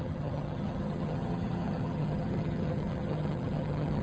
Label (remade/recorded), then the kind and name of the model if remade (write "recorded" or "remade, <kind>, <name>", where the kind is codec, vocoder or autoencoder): remade, vocoder, HiFi-GAN